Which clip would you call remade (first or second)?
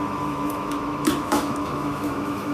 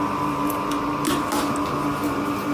first